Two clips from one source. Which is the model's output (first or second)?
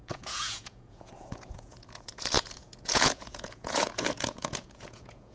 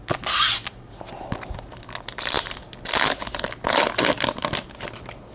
first